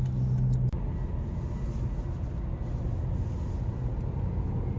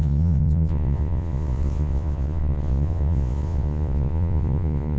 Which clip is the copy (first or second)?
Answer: second